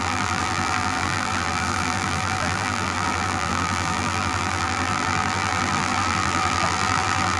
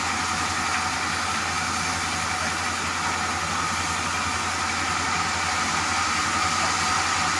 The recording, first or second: second